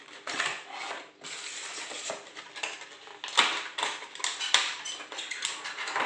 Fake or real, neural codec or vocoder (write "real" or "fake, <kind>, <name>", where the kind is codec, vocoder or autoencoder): real